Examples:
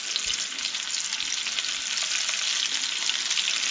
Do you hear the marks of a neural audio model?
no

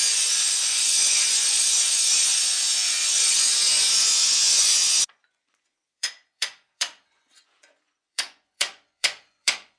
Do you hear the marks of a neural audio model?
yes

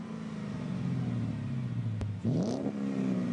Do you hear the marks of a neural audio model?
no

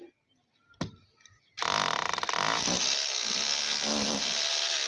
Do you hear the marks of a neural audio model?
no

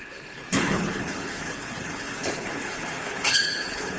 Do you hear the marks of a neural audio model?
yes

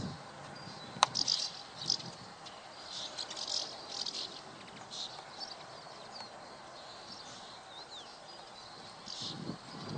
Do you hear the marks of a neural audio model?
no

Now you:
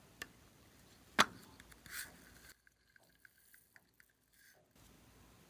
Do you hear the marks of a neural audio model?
no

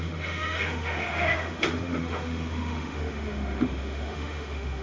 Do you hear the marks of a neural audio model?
yes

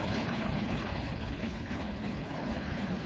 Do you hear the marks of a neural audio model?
yes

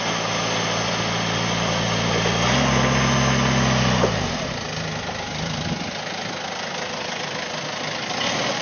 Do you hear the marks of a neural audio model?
no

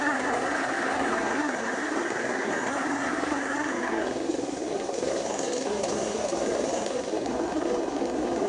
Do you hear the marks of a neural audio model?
yes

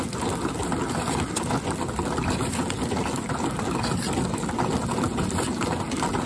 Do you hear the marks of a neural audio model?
no